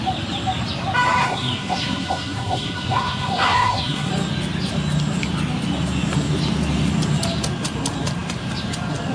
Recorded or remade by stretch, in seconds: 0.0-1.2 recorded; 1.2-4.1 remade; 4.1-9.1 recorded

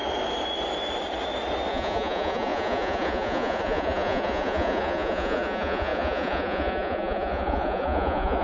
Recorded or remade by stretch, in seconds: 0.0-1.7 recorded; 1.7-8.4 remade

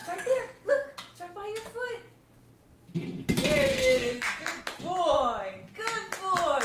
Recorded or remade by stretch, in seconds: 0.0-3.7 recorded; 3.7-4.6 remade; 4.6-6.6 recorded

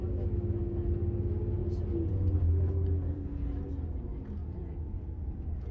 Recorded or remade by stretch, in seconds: 0.0-4.4 recorded; 4.4-5.7 remade

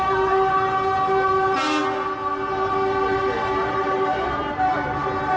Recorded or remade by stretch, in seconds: 0.0-5.4 recorded